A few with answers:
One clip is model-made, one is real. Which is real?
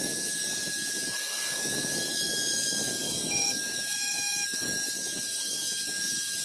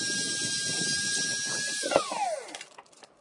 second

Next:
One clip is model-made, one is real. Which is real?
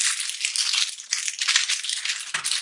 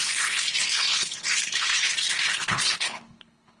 first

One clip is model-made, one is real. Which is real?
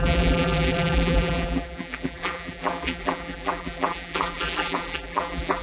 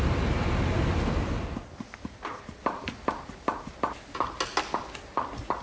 second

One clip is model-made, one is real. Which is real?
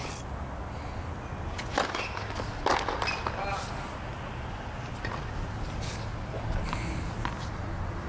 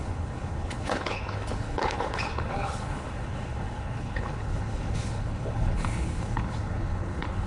first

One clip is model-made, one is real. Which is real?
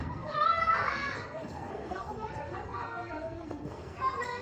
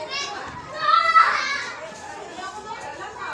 second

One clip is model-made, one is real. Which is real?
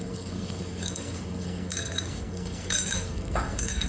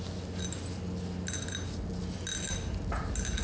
second